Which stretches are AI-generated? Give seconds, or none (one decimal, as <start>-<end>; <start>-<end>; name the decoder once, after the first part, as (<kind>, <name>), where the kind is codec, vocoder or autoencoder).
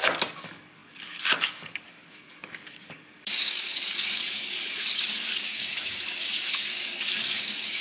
0.0-7.8 (codec, DAC)